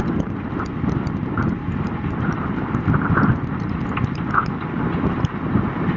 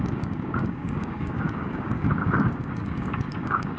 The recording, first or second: first